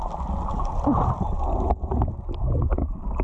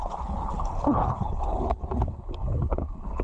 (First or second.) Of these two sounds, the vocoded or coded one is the second